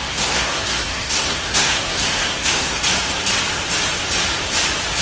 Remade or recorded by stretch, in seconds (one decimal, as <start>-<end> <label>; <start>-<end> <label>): 0.0-2.8 remade; 2.8-5.0 recorded